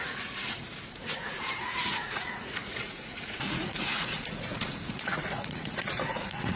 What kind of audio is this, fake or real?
fake